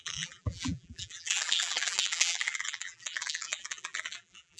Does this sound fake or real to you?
fake